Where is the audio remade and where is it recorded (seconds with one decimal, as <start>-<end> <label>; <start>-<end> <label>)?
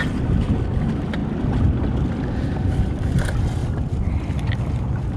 0.0-5.2 recorded